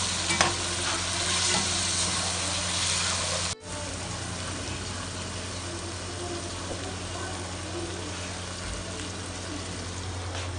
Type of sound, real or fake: real